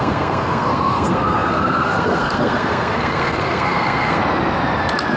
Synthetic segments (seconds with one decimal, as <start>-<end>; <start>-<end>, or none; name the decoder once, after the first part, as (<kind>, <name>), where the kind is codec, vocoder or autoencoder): 0.0-4.2 (codec, SNAC)